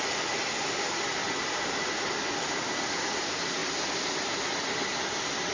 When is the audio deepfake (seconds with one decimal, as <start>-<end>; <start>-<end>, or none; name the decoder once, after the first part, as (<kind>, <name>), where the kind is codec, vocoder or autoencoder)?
3.6-4.8 (vocoder, BigVGAN v2)